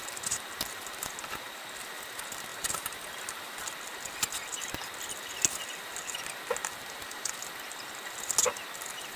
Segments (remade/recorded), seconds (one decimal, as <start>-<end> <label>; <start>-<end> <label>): 0.0-2.5 recorded; 2.5-3.0 remade; 3.0-6.6 recorded; 6.6-7.3 remade; 7.3-9.2 recorded